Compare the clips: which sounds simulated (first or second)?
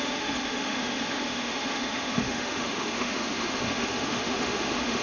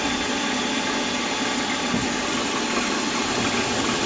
first